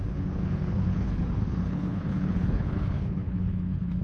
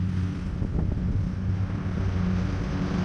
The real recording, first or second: second